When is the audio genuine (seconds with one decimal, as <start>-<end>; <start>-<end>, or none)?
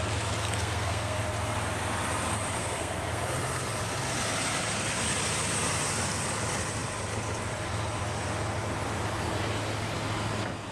0.0-0.4; 1.2-2.6; 3.2-10.7